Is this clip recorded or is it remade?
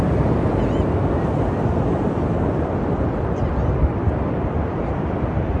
remade